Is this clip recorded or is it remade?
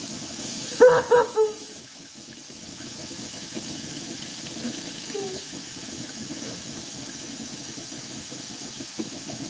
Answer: remade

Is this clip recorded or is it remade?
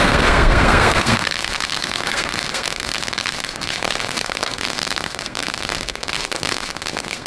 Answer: remade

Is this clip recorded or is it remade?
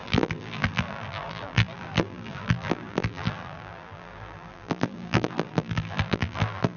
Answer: remade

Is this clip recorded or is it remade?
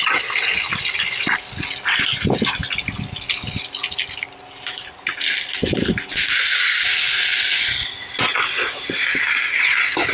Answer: recorded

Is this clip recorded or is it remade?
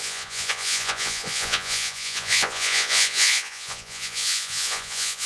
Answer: remade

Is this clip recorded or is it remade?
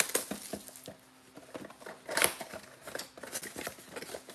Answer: recorded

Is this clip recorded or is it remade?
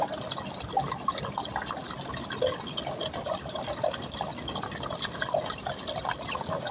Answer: recorded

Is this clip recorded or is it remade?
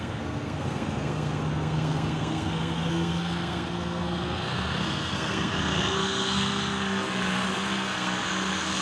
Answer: remade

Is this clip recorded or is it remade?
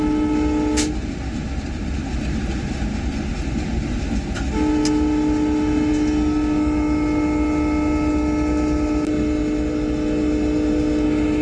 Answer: recorded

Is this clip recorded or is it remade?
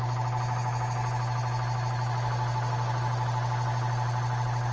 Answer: recorded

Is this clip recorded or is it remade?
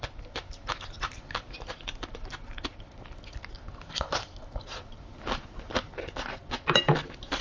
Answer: recorded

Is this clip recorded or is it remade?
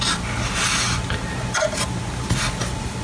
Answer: recorded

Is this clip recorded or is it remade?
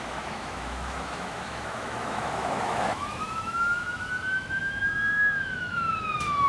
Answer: remade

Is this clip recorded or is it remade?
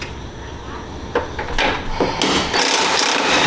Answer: recorded